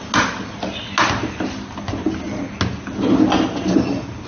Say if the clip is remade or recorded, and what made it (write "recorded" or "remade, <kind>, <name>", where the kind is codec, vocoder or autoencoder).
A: recorded